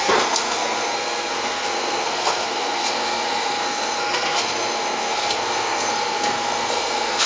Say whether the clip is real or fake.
fake